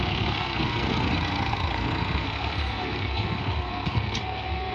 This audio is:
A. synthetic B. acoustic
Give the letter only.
A